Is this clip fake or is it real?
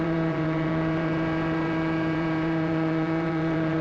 fake